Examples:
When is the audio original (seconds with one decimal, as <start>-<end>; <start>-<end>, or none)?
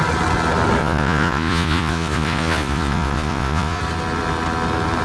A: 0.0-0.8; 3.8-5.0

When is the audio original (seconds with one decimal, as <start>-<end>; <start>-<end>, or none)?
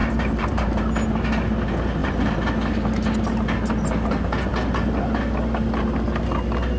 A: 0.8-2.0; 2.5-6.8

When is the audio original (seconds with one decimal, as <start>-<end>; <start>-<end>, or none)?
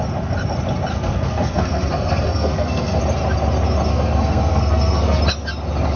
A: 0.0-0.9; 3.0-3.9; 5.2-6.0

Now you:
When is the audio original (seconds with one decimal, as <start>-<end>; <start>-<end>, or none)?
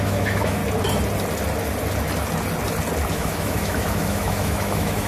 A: 0.6-3.1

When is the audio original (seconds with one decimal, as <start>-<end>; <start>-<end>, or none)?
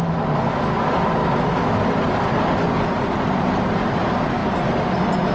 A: 0.0-1.2; 1.8-5.3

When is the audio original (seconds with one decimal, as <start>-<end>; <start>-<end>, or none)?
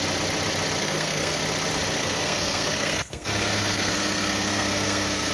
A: 0.0-0.8; 1.4-2.0